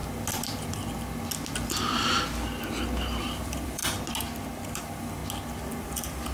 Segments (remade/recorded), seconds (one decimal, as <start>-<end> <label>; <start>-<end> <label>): 0.0-3.2 recorded; 3.2-3.8 remade; 3.8-4.8 recorded; 4.8-5.2 remade; 5.2-5.8 recorded; 5.8-6.3 remade